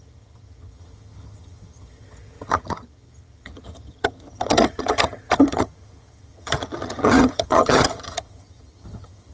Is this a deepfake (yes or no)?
yes